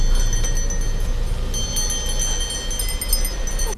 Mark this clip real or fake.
real